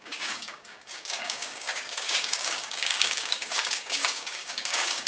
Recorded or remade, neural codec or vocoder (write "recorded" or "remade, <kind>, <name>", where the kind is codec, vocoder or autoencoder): remade, codec, DAC